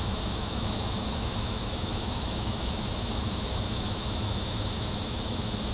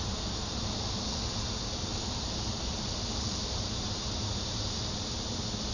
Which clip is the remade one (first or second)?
first